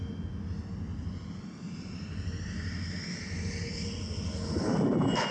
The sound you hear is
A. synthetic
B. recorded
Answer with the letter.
B